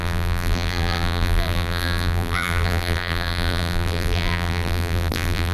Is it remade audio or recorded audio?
remade